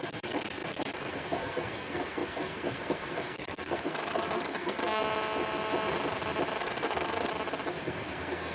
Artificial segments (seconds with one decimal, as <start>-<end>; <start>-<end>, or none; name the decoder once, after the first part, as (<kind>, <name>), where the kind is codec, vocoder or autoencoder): 0.0-5.0 (codec, SNAC); 6.6-7.3; 7.8-8.5